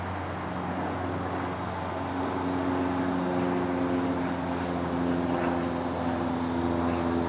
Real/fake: real